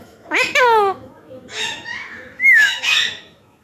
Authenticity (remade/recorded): remade